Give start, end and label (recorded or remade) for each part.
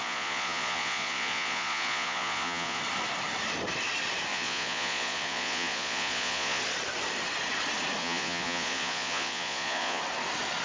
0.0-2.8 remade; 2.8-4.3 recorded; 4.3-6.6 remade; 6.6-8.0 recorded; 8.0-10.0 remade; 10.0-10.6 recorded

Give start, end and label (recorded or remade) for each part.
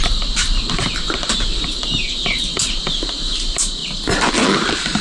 0.0-5.0 recorded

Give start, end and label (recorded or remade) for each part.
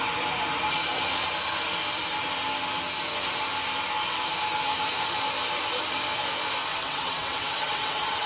0.0-6.7 recorded; 6.7-8.3 remade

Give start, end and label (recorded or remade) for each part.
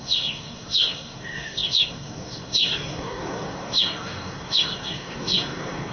0.0-5.9 remade